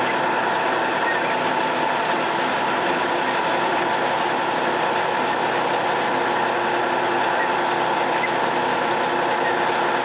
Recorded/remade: recorded